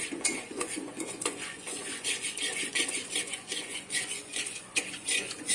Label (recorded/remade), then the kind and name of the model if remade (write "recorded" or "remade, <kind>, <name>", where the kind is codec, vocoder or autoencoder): remade, vocoder, Vocos